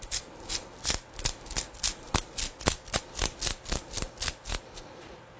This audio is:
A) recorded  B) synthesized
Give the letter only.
A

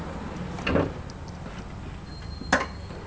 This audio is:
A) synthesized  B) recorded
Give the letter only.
B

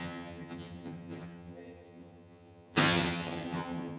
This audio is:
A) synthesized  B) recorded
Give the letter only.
A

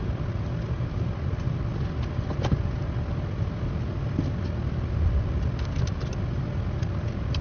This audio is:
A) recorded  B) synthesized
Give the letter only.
A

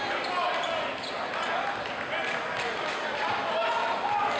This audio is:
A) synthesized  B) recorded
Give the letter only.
B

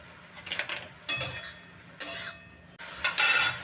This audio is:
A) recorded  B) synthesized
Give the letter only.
A